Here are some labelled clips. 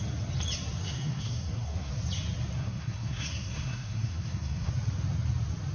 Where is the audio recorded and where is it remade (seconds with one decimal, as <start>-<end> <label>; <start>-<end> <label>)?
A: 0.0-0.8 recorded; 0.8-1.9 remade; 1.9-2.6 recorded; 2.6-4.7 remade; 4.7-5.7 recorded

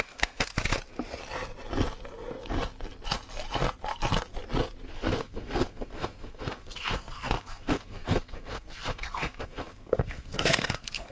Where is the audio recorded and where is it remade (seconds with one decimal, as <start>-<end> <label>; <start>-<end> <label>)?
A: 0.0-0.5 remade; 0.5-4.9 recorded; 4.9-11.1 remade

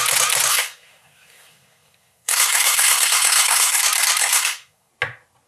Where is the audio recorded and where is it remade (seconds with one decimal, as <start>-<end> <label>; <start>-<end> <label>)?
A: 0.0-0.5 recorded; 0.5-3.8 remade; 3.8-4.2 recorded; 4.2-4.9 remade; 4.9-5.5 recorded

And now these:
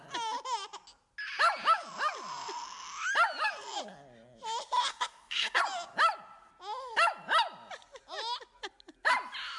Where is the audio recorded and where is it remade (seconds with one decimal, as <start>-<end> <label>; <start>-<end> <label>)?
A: 0.0-4.9 recorded; 4.9-5.6 remade; 5.6-9.6 recorded